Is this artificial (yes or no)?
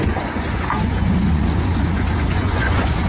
yes